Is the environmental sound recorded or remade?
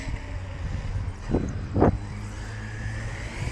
recorded